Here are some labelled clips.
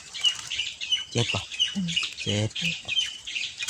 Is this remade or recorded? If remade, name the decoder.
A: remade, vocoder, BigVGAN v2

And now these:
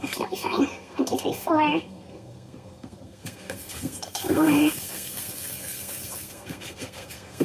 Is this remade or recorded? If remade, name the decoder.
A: remade, codec, SNAC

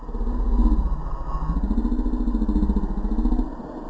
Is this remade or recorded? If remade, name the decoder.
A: recorded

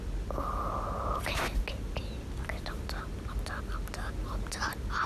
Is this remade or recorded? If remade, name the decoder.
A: recorded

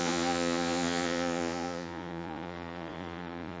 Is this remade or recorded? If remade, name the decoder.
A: remade, vocoder, Vocos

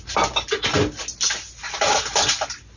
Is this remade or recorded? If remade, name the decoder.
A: recorded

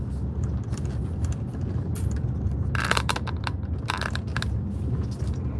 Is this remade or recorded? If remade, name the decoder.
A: recorded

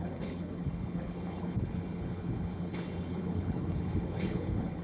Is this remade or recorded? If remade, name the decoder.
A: remade, codec, HILCodec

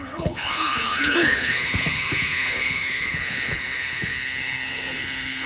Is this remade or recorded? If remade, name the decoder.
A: remade, codec, HILCodec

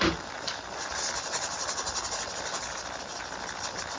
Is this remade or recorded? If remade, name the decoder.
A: recorded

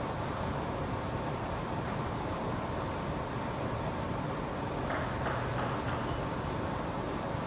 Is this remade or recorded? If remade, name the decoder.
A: recorded